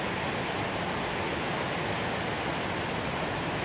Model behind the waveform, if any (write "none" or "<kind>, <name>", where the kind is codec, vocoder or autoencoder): none